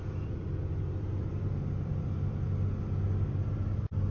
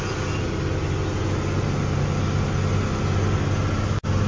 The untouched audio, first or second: second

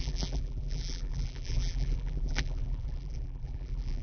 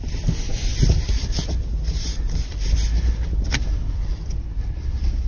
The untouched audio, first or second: second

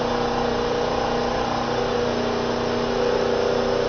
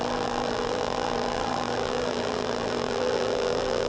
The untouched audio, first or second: first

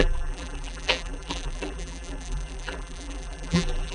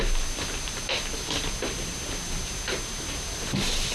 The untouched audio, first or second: second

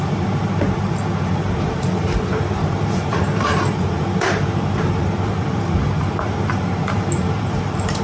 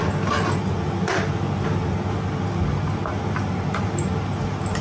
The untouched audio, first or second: second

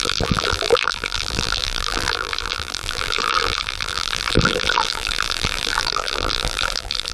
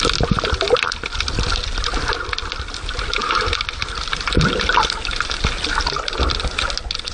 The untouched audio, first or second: second